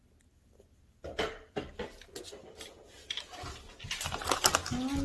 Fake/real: real